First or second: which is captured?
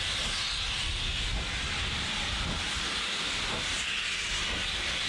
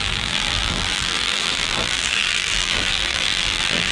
first